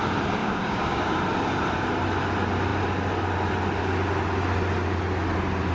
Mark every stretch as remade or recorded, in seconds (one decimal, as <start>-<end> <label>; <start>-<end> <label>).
0.0-0.4 recorded; 0.4-1.2 remade; 1.2-5.7 recorded